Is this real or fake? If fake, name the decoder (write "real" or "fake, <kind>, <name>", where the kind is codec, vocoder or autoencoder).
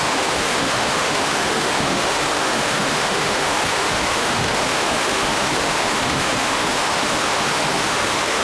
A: fake, autoencoder, DAC-VAE